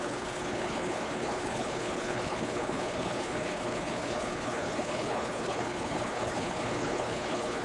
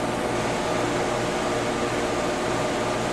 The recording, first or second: second